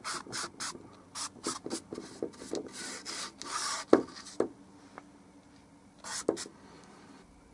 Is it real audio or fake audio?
real